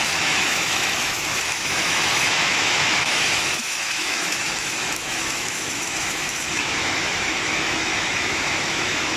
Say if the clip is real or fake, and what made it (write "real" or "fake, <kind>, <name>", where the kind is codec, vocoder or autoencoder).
fake, autoencoder, DAC-VAE